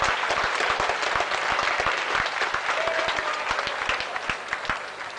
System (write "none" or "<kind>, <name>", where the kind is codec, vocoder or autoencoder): none